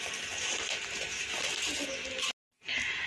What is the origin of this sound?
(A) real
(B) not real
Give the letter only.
A